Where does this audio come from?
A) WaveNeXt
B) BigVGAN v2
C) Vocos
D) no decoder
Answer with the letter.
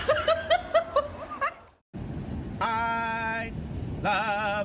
D